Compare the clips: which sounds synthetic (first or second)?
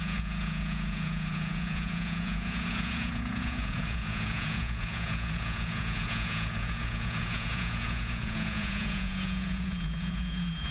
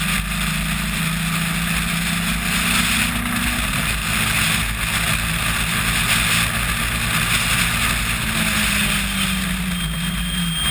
first